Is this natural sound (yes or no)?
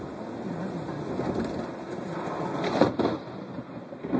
yes